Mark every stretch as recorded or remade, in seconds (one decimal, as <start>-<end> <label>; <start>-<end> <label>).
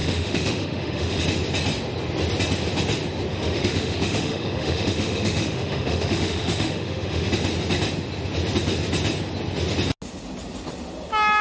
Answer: 0.0-1.2 remade; 1.2-3.3 recorded; 3.3-7.3 remade; 7.3-11.4 recorded